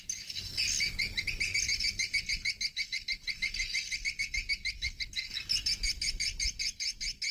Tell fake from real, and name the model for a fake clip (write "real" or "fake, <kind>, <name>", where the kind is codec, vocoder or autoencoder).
real